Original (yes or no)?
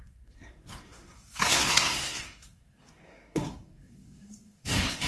no